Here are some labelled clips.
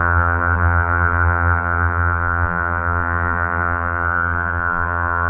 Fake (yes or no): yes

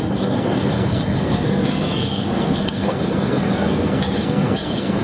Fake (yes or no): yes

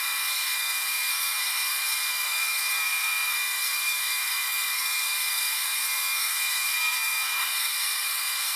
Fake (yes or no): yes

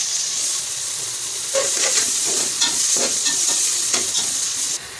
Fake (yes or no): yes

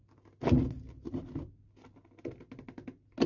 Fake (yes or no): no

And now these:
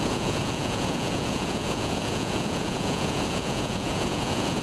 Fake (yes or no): yes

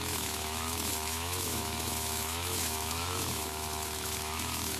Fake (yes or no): yes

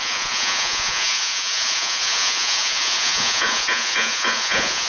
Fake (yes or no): yes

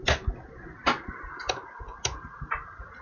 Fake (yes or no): no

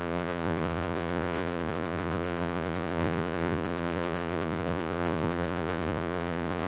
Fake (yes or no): yes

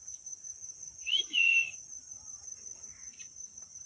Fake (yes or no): yes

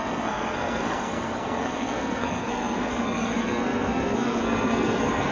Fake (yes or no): yes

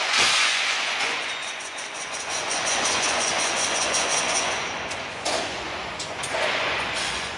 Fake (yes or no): yes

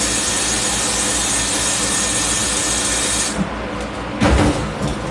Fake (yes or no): no